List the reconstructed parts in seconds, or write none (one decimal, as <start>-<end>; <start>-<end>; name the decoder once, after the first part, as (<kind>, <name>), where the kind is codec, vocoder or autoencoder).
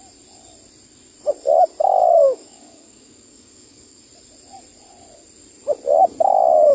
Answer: 2.0-4.0 (codec, DAC)